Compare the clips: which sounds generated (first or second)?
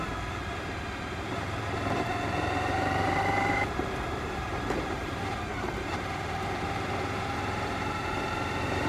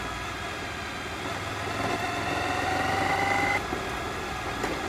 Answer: first